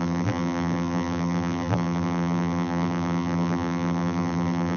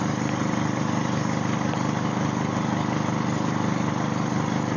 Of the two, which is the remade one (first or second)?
first